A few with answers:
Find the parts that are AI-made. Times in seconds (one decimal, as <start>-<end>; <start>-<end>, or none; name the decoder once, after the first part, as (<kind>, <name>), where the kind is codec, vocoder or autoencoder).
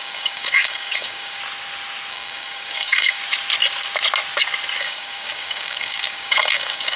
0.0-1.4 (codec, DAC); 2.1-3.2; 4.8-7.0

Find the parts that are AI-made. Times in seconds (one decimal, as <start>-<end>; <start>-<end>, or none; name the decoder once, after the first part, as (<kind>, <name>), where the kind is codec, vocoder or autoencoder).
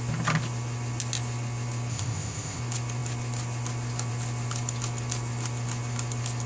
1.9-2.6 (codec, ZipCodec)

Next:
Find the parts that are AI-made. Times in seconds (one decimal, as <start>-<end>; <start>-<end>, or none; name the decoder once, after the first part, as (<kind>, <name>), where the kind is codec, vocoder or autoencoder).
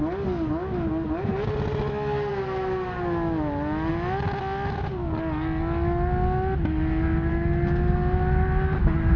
none